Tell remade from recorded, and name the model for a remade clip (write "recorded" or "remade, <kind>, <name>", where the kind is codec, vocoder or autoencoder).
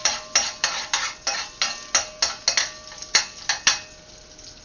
recorded